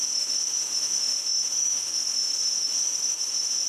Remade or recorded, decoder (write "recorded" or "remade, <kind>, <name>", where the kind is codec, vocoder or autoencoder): remade, autoencoder, DAC-VAE